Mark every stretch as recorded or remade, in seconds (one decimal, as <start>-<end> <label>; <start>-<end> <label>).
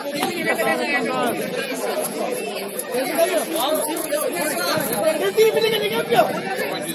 0.0-0.7 remade; 0.7-1.4 recorded; 1.4-6.9 remade